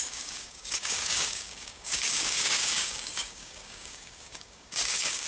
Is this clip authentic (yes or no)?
no